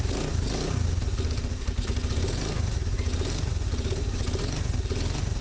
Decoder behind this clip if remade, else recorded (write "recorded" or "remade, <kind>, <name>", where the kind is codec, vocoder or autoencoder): recorded